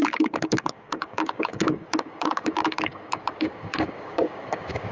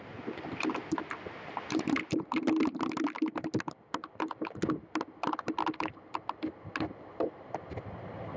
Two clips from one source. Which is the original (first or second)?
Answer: second